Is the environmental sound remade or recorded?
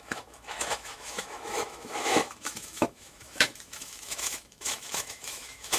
remade